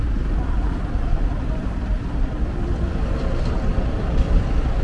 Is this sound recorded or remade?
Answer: recorded